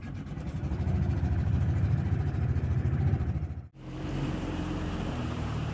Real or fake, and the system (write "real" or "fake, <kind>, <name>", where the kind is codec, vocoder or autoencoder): fake, vocoder, BigVGAN v2